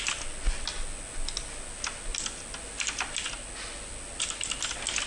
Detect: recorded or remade recorded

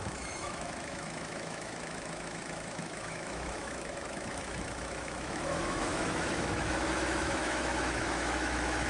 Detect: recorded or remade remade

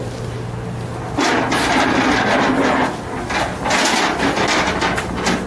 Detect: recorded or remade recorded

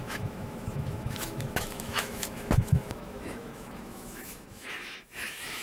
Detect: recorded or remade remade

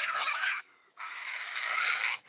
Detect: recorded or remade remade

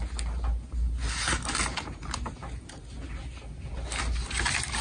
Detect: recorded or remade recorded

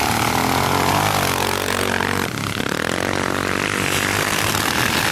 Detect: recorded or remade recorded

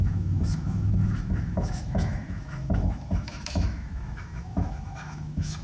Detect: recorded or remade remade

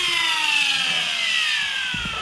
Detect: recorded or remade recorded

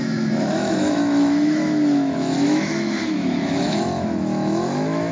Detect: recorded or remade remade